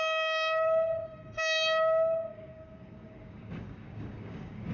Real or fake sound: fake